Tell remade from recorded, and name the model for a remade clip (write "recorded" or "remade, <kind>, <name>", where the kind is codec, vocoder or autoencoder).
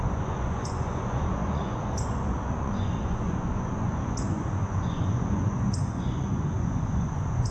remade, vocoder, Vocos